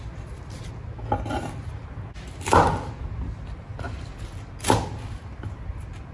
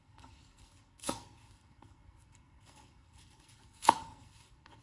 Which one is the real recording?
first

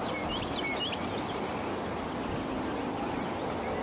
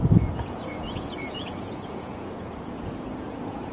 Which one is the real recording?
first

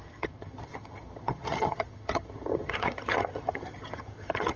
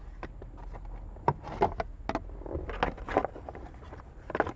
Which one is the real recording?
second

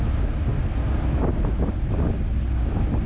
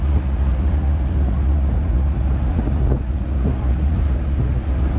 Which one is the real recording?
first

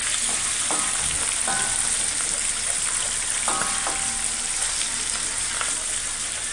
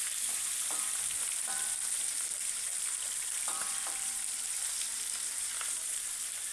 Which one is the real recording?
first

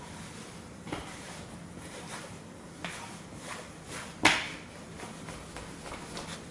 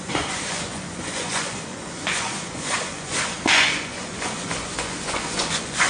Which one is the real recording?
first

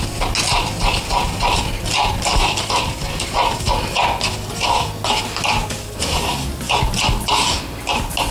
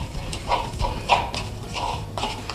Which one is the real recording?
first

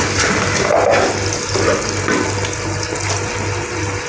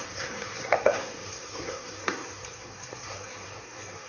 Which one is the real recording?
first